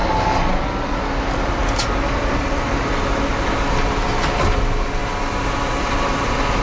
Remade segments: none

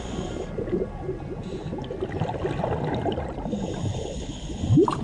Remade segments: 3.9-4.6 (codec, HILCodec)

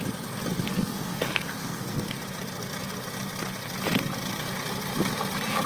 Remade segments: 0.7-2.2 (codec, SNAC)